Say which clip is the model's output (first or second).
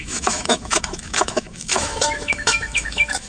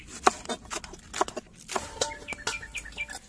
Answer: first